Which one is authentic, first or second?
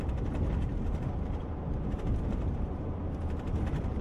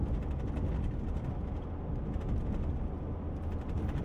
second